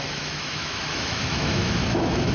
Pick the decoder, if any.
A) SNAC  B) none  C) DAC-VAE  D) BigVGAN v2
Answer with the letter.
C